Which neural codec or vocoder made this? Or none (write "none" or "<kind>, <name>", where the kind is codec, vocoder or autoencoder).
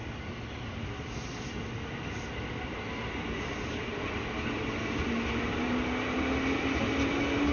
none